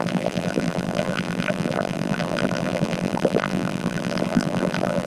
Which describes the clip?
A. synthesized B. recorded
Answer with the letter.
A